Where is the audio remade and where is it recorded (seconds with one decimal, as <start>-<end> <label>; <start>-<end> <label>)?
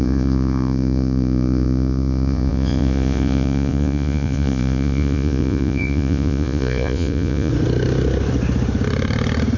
0.0-7.5 remade; 7.5-9.6 recorded